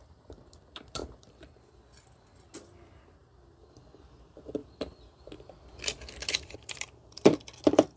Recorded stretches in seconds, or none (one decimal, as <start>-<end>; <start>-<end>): none

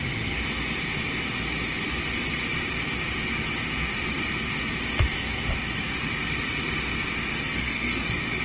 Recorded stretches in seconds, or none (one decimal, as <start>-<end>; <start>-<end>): 0.0-7.3

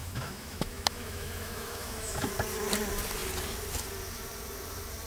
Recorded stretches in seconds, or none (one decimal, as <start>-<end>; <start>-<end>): 2.3-5.1

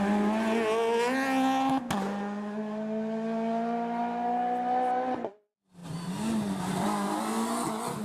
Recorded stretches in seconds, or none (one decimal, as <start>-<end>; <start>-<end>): 0.0-5.8; 7.2-8.0